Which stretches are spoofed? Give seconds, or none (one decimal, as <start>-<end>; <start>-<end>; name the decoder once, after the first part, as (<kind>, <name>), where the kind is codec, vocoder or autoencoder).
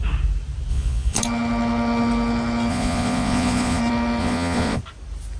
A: 0.7-1.2 (vocoder, Vocos); 2.7-3.8; 4.2-4.8